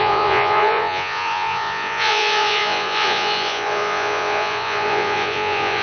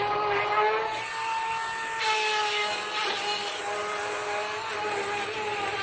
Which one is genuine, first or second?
second